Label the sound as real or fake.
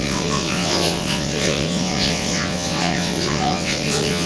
fake